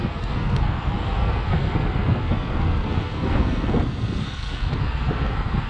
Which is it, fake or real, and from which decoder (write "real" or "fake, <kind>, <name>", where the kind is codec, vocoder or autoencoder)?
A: fake, codec, SNAC